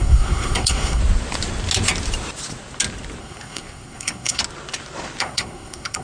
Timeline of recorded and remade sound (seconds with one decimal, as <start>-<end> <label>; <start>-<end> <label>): 0.0-1.0 remade; 1.0-3.2 recorded; 3.2-4.4 remade; 4.4-5.2 recorded; 5.2-6.0 remade